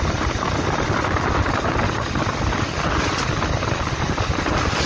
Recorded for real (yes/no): yes